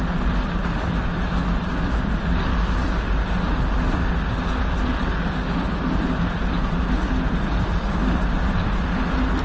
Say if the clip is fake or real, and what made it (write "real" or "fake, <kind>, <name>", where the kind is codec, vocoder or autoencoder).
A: real